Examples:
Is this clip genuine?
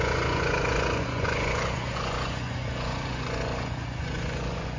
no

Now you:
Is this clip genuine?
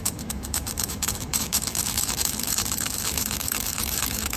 no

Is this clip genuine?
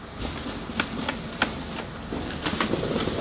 yes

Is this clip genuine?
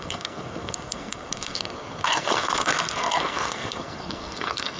no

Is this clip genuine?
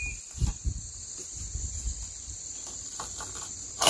yes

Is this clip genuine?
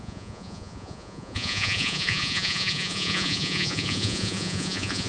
no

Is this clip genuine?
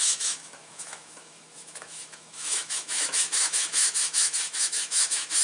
no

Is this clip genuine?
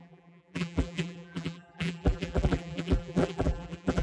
no